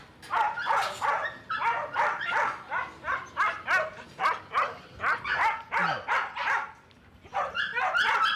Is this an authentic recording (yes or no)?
yes